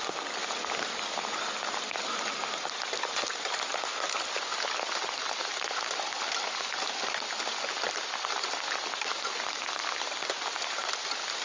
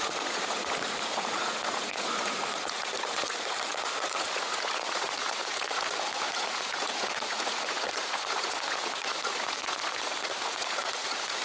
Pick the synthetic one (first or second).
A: second